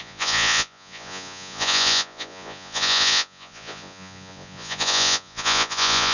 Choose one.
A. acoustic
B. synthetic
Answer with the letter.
B